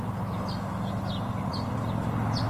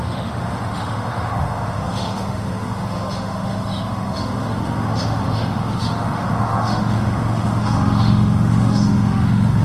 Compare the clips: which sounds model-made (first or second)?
second